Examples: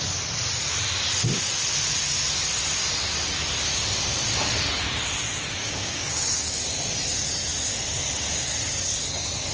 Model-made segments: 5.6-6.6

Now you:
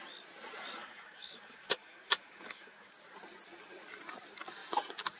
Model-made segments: 0.8-2.9

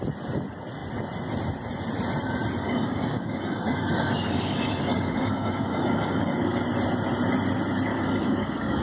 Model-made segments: 2.6-6.6; 7.9-8.8

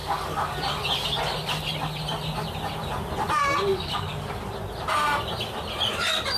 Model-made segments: 0.0-0.5; 3.7-4.4

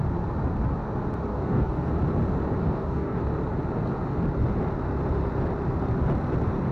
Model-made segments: 1.3-1.9; 2.6-3.2